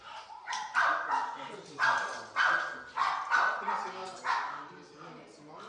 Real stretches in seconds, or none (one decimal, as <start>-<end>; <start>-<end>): 0.0-4.0; 4.7-5.7